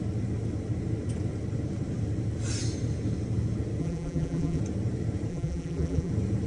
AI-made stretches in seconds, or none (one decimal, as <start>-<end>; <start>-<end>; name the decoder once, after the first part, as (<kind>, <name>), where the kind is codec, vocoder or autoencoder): 3.8-4.6 (vocoder, BigVGAN v2); 5.3-6.1

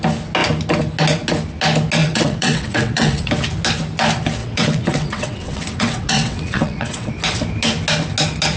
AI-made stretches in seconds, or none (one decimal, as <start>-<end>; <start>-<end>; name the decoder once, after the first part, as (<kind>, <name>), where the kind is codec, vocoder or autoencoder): 2.0-3.3 (vocoder, WaveNeXt); 4.4-7.1

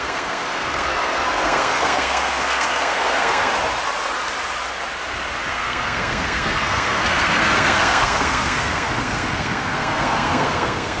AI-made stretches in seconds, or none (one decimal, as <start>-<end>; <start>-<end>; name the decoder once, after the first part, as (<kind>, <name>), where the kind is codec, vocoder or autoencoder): 0.0-3.5 (codec, SNAC); 5.5-11.0

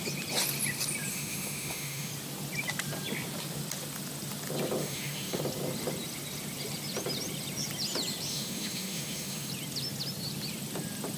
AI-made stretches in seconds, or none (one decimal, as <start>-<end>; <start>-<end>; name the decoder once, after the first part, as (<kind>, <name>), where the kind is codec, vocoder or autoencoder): 1.1-2.1 (autoencoder, DAC-VAE); 4.8-5.4; 8.3-9.5

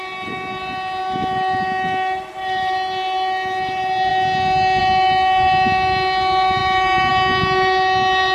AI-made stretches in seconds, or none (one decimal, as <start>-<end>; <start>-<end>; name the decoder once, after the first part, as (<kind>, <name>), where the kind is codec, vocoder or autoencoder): none

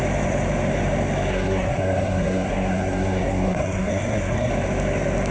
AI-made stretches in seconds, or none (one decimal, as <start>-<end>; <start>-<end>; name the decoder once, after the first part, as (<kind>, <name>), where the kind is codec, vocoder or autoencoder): 1.3-4.5 (codec, SNAC)